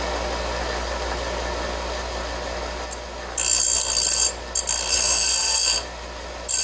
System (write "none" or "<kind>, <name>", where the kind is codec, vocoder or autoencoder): none